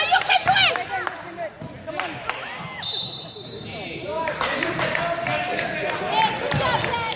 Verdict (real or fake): real